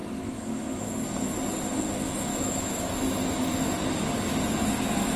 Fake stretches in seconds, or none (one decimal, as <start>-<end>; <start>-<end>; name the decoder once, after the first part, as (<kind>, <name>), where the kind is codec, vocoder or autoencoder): 0.0-0.9 (autoencoder, DAC-VAE); 2.3-2.9